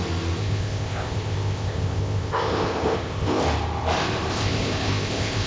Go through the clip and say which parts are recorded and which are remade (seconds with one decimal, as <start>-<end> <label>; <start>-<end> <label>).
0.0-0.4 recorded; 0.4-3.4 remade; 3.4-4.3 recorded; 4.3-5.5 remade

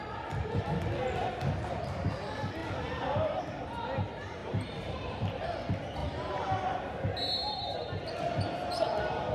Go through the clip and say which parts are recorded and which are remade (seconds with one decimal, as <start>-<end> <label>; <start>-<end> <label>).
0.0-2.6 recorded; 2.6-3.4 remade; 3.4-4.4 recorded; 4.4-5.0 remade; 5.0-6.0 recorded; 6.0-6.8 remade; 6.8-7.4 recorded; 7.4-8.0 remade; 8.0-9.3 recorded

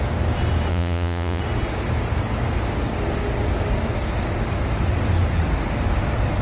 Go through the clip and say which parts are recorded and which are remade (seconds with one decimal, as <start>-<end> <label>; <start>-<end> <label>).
0.0-0.7 recorded; 0.7-1.4 remade; 1.4-6.4 recorded

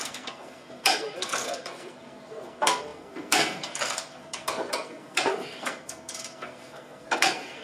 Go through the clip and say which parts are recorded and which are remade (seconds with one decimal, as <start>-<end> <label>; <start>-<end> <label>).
0.0-7.6 remade

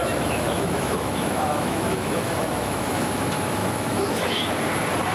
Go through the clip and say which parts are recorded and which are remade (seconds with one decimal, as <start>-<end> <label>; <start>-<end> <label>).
0.0-3.1 remade; 3.1-3.6 recorded; 3.6-4.5 remade; 4.5-5.1 recorded

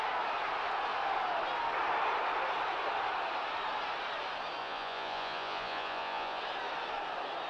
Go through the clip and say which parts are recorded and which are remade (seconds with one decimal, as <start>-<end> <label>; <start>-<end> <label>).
0.0-4.6 recorded; 4.6-6.4 remade; 6.4-7.5 recorded